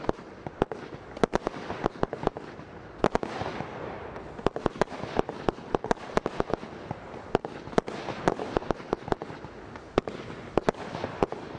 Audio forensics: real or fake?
real